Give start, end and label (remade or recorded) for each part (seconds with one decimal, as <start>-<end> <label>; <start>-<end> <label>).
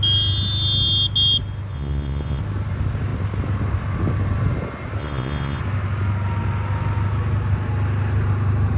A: 0.0-1.7 recorded; 1.7-2.4 remade; 2.4-5.0 recorded; 5.0-5.6 remade; 5.6-8.8 recorded